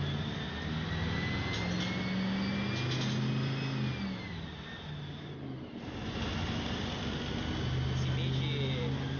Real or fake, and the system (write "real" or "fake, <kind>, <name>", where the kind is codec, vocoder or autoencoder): real